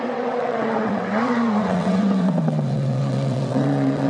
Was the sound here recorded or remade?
remade